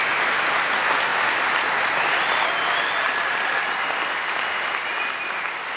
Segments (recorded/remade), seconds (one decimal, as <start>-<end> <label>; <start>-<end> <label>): 0.0-5.8 recorded